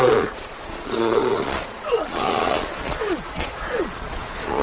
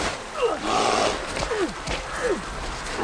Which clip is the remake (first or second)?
first